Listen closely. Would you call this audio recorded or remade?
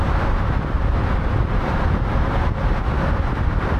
recorded